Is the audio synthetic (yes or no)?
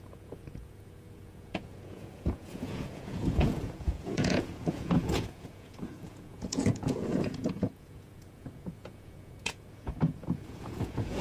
yes